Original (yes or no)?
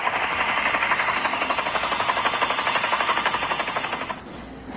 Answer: yes